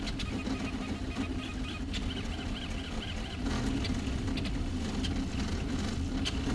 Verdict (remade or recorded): recorded